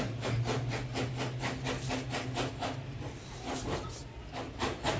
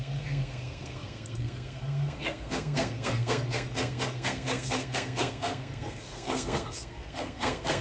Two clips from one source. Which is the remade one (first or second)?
second